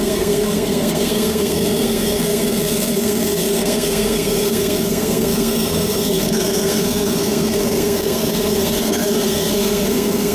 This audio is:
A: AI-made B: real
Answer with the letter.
A